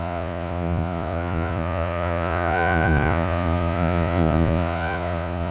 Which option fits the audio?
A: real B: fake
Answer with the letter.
B